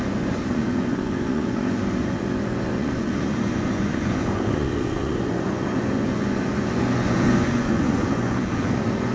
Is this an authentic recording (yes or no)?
no